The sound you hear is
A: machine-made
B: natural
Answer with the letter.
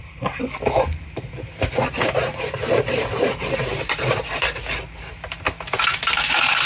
B